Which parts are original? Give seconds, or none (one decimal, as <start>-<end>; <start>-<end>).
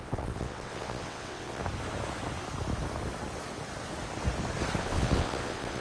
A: 1.6-4.8